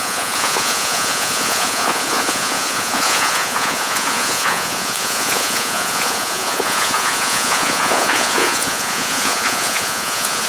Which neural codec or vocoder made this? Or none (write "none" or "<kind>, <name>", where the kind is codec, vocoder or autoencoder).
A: vocoder, Vocos